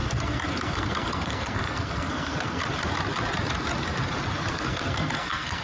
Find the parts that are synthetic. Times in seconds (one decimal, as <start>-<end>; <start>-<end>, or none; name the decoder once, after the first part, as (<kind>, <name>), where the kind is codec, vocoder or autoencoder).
0.0-2.6 (codec, SNAC); 4.5-5.6